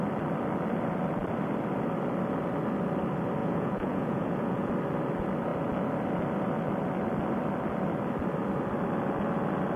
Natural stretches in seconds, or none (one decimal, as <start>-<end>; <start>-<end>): 0.0-3.4; 4.7-9.8